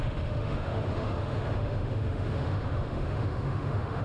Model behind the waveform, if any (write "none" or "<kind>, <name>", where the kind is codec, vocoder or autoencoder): autoencoder, DAC-VAE